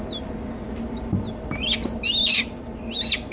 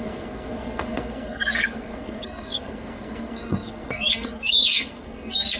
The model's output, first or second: second